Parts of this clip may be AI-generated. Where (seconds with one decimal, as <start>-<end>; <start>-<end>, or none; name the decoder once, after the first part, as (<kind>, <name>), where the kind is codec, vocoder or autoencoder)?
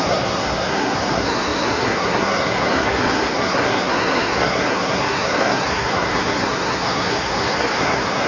0.0-8.3 (codec, SNAC)